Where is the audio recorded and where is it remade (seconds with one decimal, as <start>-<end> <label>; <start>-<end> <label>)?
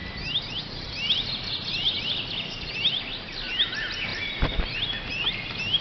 0.0-5.8 recorded